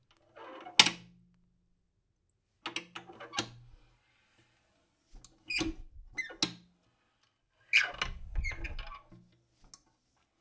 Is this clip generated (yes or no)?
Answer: no